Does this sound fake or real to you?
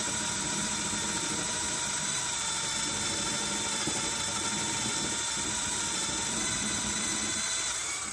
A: fake